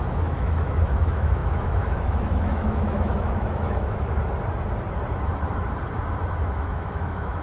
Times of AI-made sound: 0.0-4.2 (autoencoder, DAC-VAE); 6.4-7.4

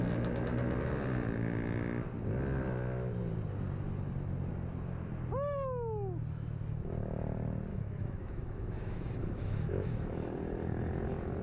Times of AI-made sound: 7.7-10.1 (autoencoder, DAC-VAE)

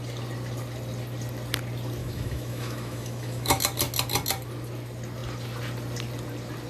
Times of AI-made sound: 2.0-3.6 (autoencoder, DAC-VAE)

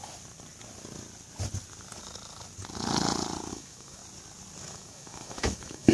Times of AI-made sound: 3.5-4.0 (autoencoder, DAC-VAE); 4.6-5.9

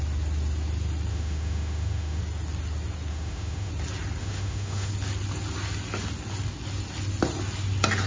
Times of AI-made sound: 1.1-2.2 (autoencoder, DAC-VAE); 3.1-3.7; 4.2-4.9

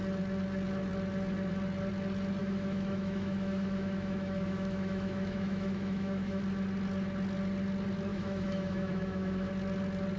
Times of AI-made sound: 2.4-6.4 (autoencoder, DAC-VAE); 8.1-9.5

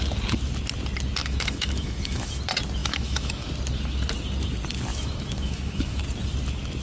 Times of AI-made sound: 1.2-2.4 (autoencoder, DAC-VAE); 2.8-3.5; 4.9-6.0